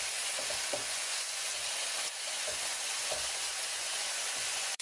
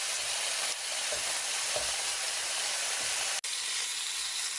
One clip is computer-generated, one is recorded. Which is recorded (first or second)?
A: second